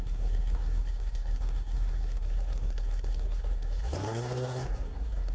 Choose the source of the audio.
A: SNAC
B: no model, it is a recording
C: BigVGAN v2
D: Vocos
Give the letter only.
A